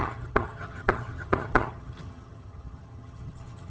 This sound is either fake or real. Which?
fake